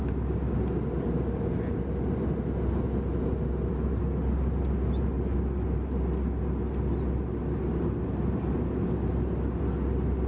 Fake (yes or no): no